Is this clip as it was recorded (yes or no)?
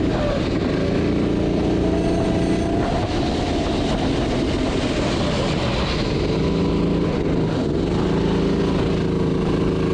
yes